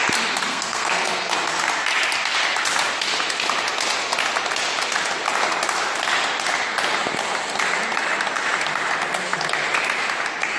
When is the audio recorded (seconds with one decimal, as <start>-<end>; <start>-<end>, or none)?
0.0-0.5; 1.3-10.6